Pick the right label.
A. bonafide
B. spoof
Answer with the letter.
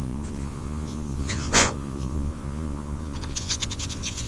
B